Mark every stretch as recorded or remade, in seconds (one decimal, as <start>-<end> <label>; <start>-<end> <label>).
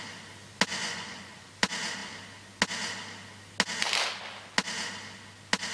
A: 0.0-0.7 recorded; 0.7-1.5 remade; 1.5-5.7 recorded